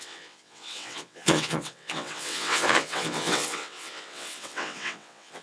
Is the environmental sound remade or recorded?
remade